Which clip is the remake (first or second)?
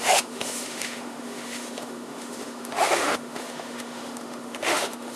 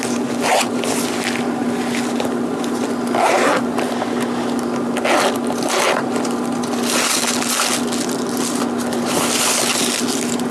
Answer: first